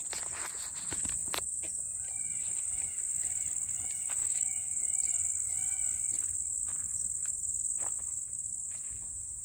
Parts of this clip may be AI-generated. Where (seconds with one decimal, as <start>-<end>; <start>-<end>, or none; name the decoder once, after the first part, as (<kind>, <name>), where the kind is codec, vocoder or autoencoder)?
4.2-4.8 (autoencoder, DAC-VAE)